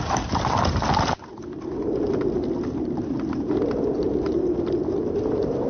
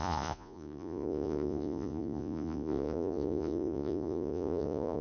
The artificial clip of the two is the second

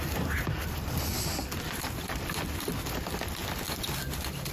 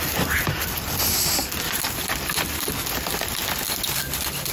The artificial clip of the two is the first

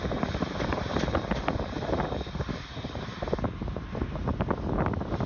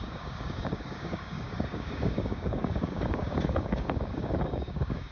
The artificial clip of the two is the second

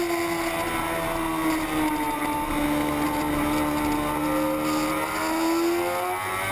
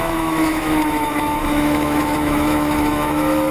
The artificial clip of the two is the second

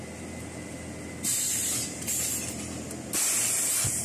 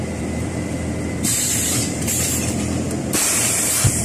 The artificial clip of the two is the second